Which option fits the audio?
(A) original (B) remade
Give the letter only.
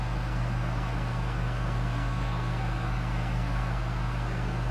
B